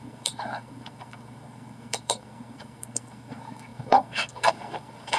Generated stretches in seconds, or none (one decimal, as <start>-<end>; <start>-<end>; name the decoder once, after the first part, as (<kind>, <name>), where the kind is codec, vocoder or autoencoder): 0.0-5.2 (codec, SNAC)

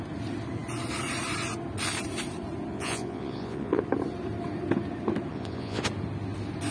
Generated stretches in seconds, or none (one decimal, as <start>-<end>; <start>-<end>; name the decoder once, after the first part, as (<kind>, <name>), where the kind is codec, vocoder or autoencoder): 2.7-3.8 (vocoder, Vocos); 5.3-5.8

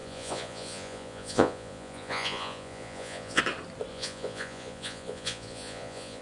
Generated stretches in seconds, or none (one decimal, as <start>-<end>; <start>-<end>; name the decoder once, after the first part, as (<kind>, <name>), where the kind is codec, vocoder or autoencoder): 0.0-3.4 (vocoder, Vocos); 3.9-6.2

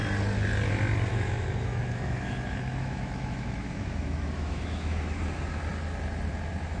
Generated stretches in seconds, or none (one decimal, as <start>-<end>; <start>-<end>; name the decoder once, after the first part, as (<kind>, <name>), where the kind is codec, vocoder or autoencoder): 1.1-5.2 (autoencoder, DAC-VAE)

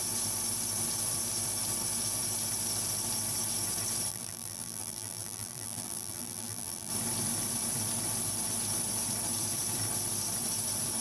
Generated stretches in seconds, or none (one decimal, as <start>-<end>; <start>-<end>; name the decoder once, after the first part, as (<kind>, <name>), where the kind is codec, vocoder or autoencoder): 4.1-6.9 (vocoder, BigVGAN v2)

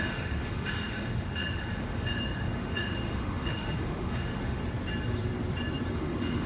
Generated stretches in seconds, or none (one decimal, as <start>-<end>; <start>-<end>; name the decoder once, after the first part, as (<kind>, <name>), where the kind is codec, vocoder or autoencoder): 0.0-4.6 (autoencoder, DAC-VAE); 5.9-6.5

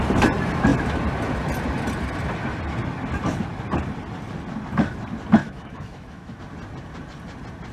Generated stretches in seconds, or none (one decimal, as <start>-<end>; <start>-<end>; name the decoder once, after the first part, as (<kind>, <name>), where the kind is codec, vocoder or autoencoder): 5.4-6.4 (autoencoder, DAC-VAE)